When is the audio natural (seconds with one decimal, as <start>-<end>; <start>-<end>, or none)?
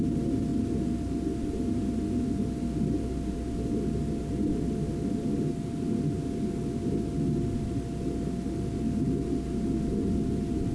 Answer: 0.0-10.7